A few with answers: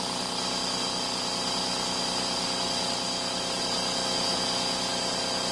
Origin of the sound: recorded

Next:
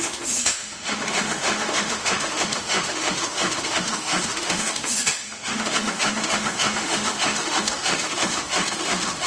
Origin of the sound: remade